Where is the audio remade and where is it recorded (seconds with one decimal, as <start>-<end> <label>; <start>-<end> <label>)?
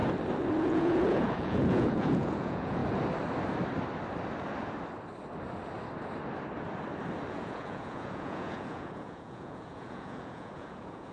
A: 0.0-0.6 recorded; 0.6-2.8 remade; 2.8-7.3 recorded; 7.3-11.1 remade